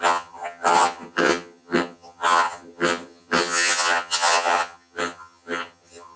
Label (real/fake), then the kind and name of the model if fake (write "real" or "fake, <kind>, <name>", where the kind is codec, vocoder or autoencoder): fake, vocoder, HiFi-GAN